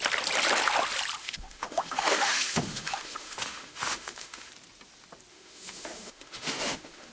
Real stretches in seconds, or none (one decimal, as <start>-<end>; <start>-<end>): 0.0-1.2; 4.5-5.3